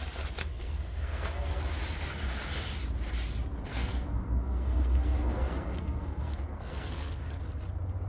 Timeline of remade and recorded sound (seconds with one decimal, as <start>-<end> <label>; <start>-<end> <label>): 0.0-0.4 recorded; 0.4-1.6 remade; 1.6-3.7 recorded; 3.7-7.4 remade; 7.4-8.1 recorded